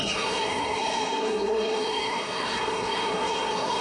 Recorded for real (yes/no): no